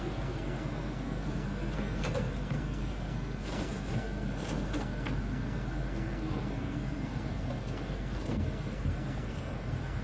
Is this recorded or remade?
remade